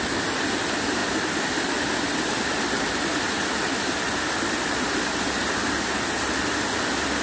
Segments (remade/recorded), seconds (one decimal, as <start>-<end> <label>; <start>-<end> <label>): 0.0-7.2 recorded